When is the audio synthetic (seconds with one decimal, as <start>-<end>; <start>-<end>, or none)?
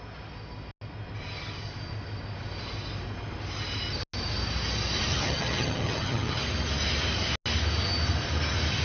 5.1-6.4